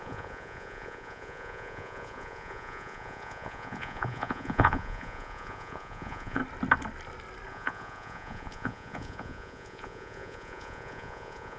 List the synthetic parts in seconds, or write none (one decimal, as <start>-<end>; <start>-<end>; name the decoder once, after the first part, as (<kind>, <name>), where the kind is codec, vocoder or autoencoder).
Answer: 0.0-6.4 (vocoder, Vocos); 7.5-11.6